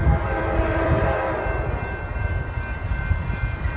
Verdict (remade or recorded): remade